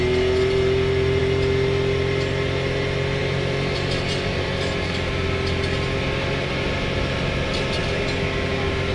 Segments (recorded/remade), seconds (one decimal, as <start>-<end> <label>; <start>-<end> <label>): 0.0-8.9 recorded